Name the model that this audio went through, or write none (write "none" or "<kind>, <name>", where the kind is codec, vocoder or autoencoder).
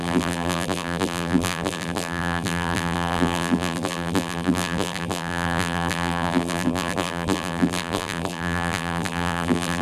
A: vocoder, BigVGAN v2